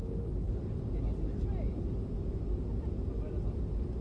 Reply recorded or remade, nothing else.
recorded